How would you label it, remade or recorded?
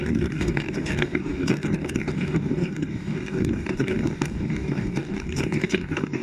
remade